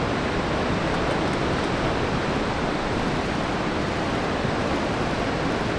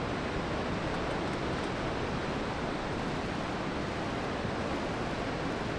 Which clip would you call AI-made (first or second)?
first